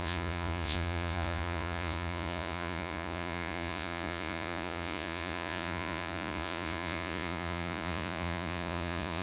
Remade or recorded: remade